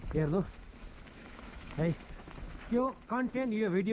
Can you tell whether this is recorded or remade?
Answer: remade